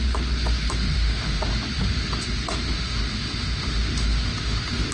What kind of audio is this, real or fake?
fake